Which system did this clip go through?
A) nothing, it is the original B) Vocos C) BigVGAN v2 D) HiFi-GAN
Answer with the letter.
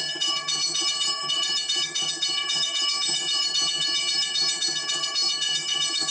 D